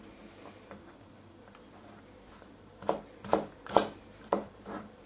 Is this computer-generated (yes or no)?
yes